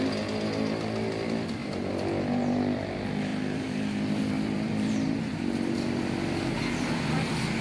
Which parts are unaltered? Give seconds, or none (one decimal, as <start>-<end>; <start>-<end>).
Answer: 0.0-1.6; 2.9-3.3; 5.4-7.6